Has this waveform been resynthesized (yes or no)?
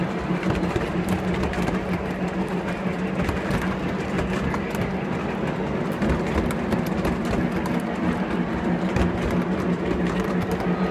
no